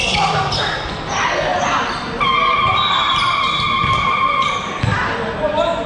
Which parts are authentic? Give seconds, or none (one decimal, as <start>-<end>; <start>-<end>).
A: 0.0-5.9